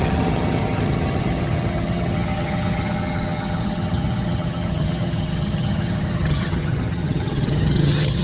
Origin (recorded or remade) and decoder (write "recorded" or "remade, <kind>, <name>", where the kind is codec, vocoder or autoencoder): remade, vocoder, HiFi-GAN